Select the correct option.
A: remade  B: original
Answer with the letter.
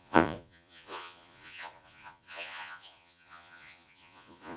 A